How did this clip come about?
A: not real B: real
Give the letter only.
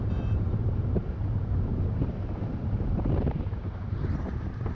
A